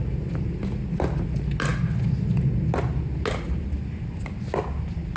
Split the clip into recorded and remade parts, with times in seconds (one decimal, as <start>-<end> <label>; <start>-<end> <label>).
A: 0.0-5.2 recorded